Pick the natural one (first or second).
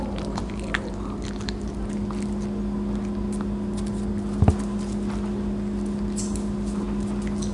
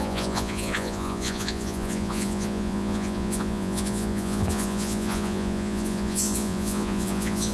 first